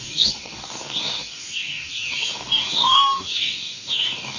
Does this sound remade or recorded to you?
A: remade